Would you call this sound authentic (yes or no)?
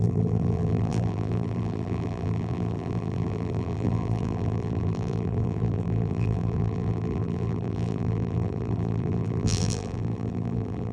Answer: no